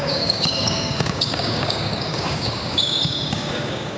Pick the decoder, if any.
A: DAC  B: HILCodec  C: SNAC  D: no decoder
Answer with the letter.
A